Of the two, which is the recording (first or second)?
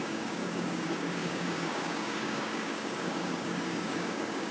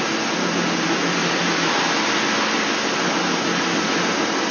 second